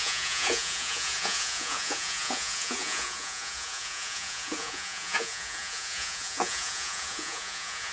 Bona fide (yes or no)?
no